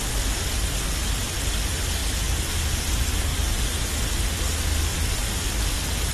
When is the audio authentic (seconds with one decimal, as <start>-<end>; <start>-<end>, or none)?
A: 0.0-3.3; 4.0-4.9; 5.4-6.1